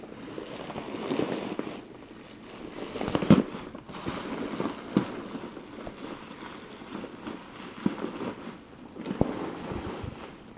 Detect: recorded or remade recorded